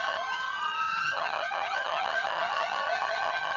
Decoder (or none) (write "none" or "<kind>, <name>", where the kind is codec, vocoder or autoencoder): vocoder, HiFi-GAN